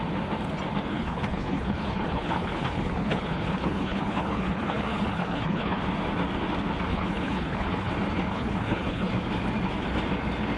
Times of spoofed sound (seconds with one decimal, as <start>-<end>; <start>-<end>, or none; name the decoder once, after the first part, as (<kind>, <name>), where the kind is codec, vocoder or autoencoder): 0.9-5.8 (codec, HILCodec); 6.9-7.9; 8.3-9.1